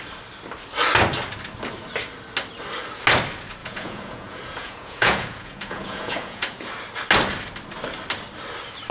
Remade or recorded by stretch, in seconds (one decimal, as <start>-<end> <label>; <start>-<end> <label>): 0.0-3.6 recorded; 3.6-6.7 remade; 6.7-8.9 recorded